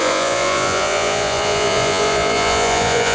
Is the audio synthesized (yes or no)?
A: yes